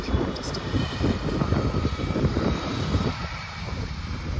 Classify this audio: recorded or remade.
remade